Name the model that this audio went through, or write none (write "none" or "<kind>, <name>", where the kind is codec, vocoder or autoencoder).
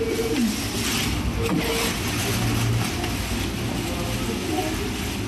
none